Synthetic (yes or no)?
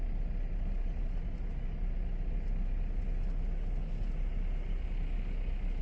no